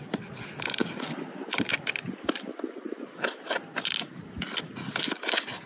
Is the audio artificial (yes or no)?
no